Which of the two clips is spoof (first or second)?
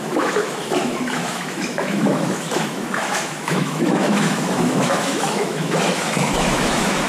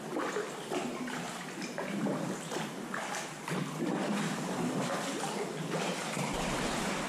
first